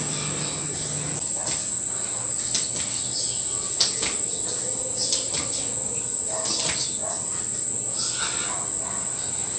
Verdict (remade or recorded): recorded